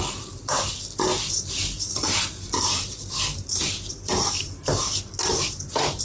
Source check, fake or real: real